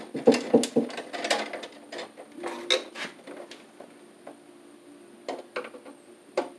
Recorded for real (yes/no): yes